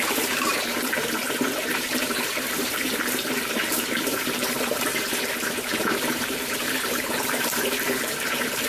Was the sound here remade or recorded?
remade